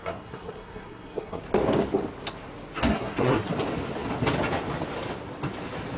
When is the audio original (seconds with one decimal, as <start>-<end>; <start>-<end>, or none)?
1.4-2.9; 3.5-6.0